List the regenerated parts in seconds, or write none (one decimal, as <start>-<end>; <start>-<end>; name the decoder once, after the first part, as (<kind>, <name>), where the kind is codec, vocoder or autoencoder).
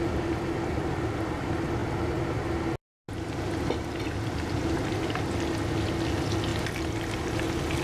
none